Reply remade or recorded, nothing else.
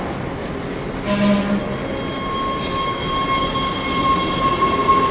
recorded